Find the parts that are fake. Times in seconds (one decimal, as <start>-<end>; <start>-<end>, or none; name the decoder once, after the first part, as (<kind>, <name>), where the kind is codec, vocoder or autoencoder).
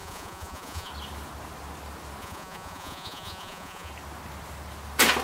0.0-0.9 (vocoder, Vocos); 2.2-3.9